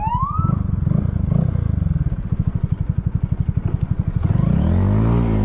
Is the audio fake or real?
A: real